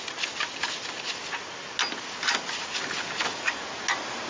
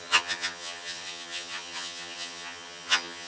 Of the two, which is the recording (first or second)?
first